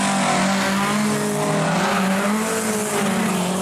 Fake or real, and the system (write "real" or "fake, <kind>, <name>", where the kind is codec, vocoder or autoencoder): real